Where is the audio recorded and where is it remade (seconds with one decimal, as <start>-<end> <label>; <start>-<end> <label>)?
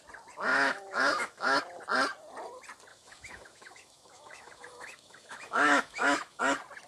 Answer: 0.0-0.5 recorded; 0.5-1.6 remade; 1.6-2.9 recorded; 2.9-6.4 remade; 6.4-6.9 recorded